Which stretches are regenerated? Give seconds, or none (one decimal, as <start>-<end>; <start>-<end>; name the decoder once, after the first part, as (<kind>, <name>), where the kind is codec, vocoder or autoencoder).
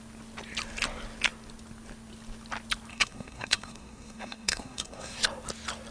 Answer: 2.9-5.2 (codec, SNAC)